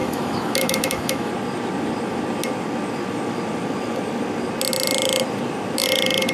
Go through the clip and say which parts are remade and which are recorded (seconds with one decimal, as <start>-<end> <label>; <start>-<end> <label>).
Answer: 0.0-1.3 remade; 1.3-6.3 recorded